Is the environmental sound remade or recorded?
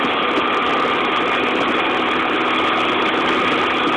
recorded